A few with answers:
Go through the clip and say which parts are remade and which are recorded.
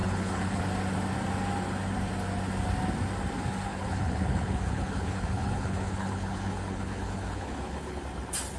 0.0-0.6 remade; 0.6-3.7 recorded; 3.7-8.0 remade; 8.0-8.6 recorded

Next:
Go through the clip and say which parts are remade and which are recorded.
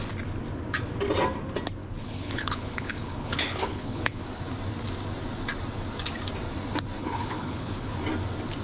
0.0-1.8 recorded; 1.8-4.2 remade; 4.2-7.0 recorded; 7.0-7.9 remade; 7.9-8.6 recorded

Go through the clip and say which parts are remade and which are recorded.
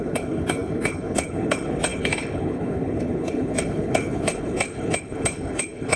0.0-6.0 remade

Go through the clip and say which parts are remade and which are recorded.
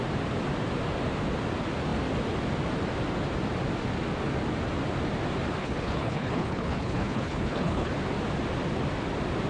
0.0-5.6 recorded; 5.6-7.9 remade; 7.9-9.5 recorded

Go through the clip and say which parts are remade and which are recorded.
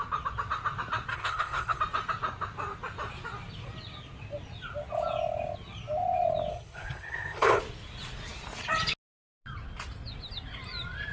0.0-1.1 recorded; 1.1-1.8 remade; 1.8-6.5 recorded; 6.5-7.6 remade; 7.6-11.1 recorded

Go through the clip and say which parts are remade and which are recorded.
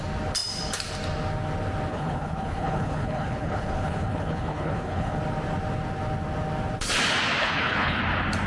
0.0-1.9 recorded; 1.9-5.2 remade; 5.2-7.4 recorded; 7.4-8.0 remade; 8.0-8.5 recorded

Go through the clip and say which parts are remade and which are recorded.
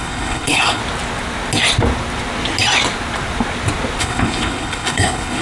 0.0-0.8 remade; 0.8-4.0 recorded; 4.0-5.4 remade